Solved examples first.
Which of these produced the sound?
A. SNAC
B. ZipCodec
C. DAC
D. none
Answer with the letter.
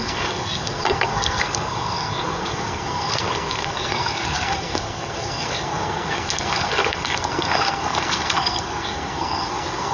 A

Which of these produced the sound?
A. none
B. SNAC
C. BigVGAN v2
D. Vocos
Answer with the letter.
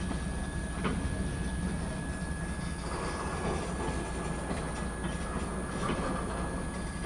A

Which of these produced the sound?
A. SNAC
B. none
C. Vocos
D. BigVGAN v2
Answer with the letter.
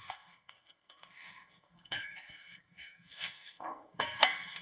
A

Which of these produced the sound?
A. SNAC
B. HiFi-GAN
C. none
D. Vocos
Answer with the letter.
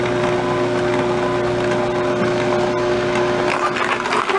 C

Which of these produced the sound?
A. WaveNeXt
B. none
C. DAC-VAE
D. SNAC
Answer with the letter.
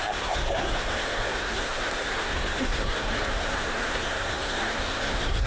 D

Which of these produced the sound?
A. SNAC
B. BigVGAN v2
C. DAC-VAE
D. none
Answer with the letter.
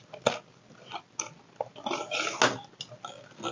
D